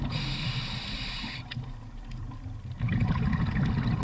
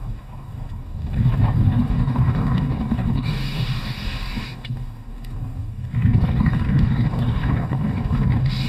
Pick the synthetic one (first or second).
second